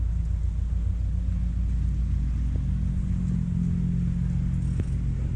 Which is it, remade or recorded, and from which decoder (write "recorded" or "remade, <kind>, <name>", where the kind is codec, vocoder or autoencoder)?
recorded